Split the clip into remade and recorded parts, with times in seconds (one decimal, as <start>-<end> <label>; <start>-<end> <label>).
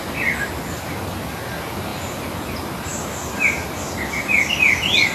0.0-5.1 recorded